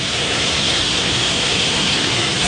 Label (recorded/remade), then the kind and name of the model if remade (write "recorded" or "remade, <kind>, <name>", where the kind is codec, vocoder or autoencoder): remade, codec, SNAC